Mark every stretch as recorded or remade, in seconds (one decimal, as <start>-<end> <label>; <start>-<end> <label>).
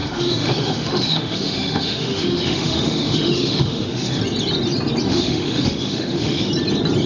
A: 0.0-4.2 remade; 4.2-5.1 recorded; 5.1-6.5 remade; 6.5-7.1 recorded